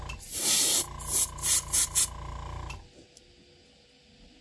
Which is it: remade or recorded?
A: recorded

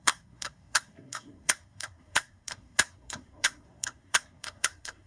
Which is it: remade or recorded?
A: remade